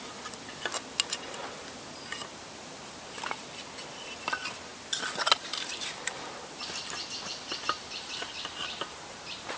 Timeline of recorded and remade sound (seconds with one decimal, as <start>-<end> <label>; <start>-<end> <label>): 0.0-9.6 recorded